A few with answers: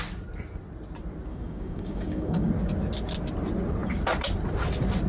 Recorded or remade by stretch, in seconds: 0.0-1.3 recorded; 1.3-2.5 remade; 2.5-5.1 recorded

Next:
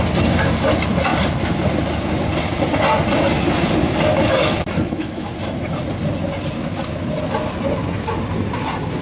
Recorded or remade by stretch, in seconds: 0.0-4.4 recorded; 4.4-5.3 remade; 5.3-9.0 recorded

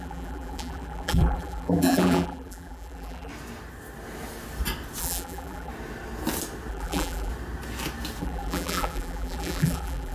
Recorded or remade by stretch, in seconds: 0.0-3.3 remade; 3.3-5.0 recorded; 5.0-5.7 remade; 5.7-6.7 recorded; 6.7-7.3 remade; 7.3-8.2 recorded; 8.2-10.1 remade

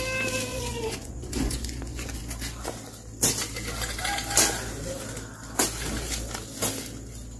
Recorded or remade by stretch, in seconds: 0.0-0.5 recorded; 0.5-2.2 remade; 2.2-7.4 recorded

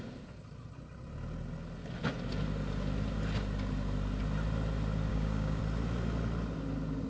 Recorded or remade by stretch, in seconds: 0.0-5.1 recorded; 5.1-5.6 remade; 5.6-7.1 recorded

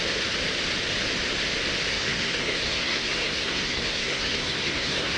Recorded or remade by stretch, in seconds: 0.0-1.9 recorded; 1.9-5.2 remade

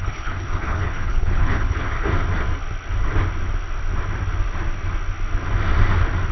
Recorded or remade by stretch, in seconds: 0.0-2.1 remade; 2.1-6.3 recorded

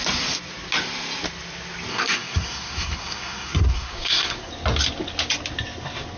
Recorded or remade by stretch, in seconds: 0.0-1.9 recorded; 1.9-4.5 remade; 4.5-6.2 recorded